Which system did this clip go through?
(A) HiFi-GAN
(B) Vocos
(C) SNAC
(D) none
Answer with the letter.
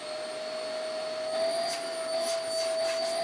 D